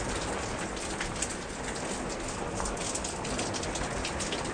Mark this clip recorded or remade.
recorded